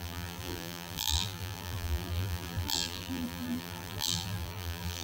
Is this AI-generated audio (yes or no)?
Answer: yes